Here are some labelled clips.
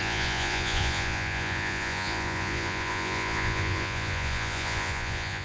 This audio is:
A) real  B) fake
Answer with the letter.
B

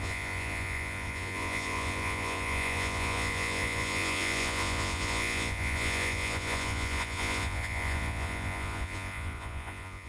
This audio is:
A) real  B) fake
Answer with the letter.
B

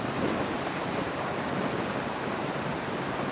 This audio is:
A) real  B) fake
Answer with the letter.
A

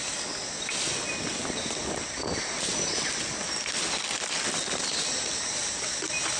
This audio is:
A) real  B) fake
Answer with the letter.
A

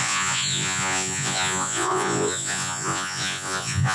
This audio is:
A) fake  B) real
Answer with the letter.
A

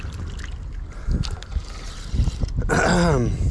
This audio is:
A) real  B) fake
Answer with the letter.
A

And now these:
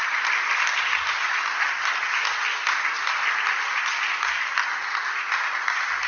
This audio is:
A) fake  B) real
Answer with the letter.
B